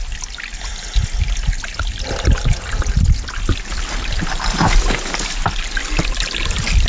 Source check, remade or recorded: recorded